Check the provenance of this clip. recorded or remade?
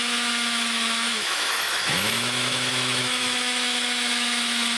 remade